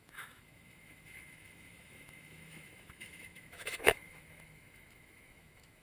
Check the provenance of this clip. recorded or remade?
remade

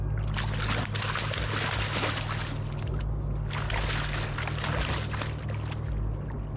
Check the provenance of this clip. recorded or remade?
recorded